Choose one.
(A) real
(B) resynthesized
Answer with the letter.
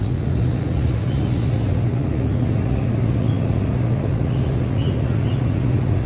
B